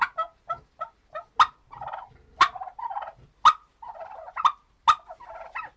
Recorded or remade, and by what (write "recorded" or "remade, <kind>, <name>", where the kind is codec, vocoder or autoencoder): recorded